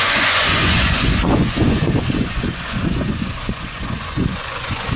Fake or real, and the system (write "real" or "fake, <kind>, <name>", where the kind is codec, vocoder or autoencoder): fake, vocoder, Vocos